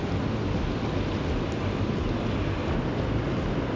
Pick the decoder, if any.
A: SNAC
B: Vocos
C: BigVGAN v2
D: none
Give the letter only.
D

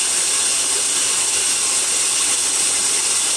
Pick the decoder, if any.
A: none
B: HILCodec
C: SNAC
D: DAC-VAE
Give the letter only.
A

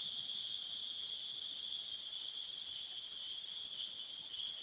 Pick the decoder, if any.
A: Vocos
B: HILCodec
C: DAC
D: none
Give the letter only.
D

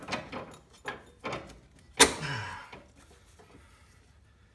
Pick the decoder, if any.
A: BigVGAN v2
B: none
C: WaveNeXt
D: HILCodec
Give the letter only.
B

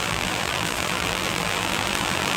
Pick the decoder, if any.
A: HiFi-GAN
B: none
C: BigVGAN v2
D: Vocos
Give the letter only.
C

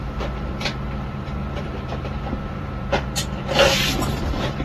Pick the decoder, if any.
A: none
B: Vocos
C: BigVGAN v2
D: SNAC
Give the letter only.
C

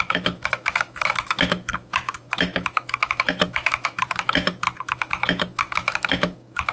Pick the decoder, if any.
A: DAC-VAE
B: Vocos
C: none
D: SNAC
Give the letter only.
A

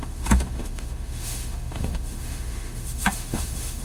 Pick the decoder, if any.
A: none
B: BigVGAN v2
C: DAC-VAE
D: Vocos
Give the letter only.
C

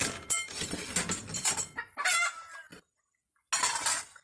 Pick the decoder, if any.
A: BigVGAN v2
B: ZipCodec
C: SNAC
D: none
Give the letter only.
D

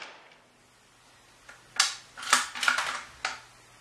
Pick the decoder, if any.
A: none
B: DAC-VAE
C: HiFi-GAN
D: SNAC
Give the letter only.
A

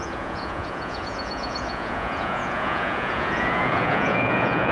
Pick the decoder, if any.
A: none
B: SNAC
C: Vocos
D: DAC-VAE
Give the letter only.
C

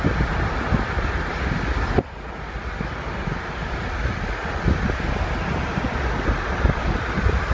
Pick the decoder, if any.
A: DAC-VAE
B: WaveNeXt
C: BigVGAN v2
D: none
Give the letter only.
D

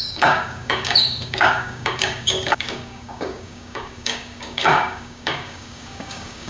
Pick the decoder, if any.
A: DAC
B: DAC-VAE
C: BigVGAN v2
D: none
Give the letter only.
A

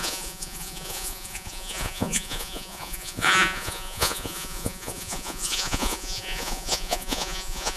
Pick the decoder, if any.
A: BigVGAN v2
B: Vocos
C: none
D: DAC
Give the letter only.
B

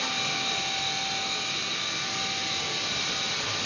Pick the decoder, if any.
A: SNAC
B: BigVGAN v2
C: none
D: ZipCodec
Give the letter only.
C